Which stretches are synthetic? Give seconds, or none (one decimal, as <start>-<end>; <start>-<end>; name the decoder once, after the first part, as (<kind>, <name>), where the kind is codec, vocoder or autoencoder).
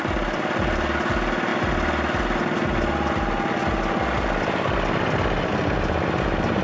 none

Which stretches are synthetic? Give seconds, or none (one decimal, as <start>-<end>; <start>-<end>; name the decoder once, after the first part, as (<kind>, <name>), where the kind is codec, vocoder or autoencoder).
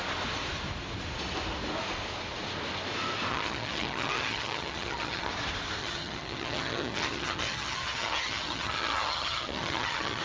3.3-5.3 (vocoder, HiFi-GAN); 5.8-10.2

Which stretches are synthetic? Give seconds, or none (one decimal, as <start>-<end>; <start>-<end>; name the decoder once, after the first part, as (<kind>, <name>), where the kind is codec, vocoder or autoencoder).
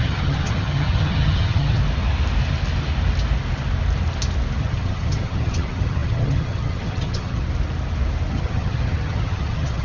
0.0-1.8 (vocoder, HiFi-GAN); 4.6-7.4; 8.3-9.8